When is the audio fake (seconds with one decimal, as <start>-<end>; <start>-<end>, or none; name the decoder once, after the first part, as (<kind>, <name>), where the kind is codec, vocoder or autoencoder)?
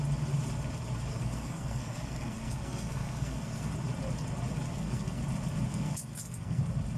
1.1-3.7 (codec, SNAC); 4.7-5.2; 5.7-6.6